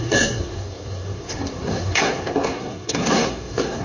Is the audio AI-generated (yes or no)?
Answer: yes